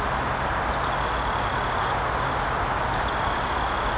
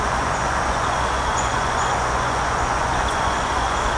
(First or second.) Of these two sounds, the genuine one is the first